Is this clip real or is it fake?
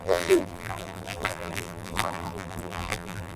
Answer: fake